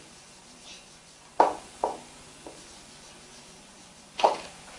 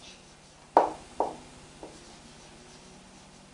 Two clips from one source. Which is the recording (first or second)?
second